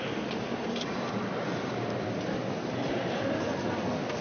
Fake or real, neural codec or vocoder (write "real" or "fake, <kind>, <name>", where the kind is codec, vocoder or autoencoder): real